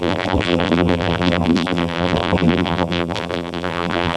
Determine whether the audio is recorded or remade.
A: remade